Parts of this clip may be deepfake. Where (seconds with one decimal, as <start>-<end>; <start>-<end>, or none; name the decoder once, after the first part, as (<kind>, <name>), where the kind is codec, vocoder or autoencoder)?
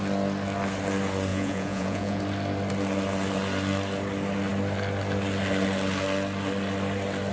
1.3-2.2 (vocoder, Vocos)